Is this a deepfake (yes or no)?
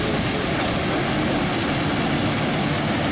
no